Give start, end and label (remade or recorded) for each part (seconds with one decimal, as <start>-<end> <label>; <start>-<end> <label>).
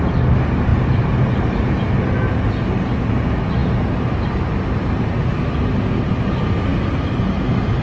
0.0-7.8 recorded